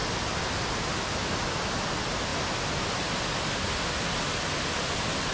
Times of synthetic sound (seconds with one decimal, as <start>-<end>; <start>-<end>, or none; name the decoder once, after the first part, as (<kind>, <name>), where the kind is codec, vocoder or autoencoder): none